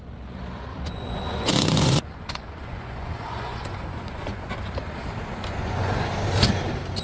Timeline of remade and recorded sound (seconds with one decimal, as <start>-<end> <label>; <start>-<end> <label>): 0.0-0.7 recorded; 0.7-4.5 remade; 4.5-5.5 recorded; 5.5-6.1 remade; 6.1-7.0 recorded